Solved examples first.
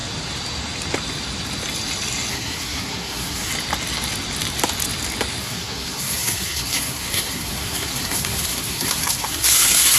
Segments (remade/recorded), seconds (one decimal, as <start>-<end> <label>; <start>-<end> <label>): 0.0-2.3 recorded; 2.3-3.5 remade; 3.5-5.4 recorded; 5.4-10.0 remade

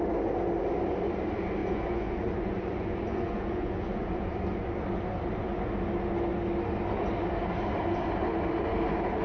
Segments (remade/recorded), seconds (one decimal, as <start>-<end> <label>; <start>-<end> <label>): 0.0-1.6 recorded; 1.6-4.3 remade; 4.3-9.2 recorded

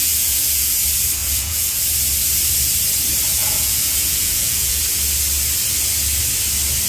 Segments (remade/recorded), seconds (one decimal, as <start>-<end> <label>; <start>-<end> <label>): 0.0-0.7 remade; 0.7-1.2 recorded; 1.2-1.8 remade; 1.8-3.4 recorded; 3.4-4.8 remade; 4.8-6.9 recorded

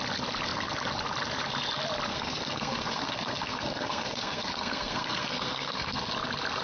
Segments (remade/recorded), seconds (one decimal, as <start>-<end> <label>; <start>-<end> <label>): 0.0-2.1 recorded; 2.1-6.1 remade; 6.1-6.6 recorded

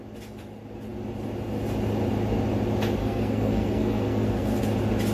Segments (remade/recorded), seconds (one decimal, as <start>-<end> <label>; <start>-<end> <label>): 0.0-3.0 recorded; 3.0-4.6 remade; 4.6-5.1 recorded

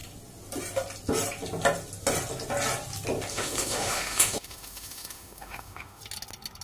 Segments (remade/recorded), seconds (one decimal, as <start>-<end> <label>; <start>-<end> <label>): 0.0-3.3 recorded; 3.3-6.0 remade; 6.0-6.6 recorded

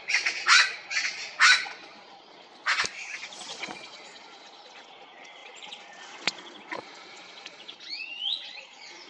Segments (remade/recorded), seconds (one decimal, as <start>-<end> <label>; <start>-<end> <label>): 0.0-2.5 remade; 2.5-3.2 recorded; 3.2-9.1 remade

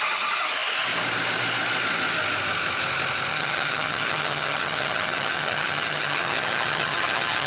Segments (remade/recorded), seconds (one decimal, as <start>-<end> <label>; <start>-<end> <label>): 0.0-3.3 recorded; 3.3-7.5 remade